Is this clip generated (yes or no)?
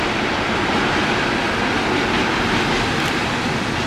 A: no